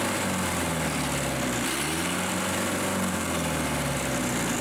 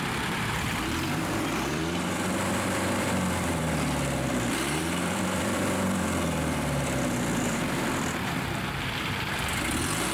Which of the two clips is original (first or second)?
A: first